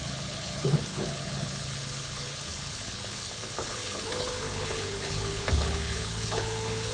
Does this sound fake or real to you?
fake